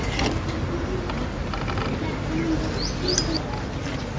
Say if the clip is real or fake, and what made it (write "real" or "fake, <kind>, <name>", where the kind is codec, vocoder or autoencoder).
real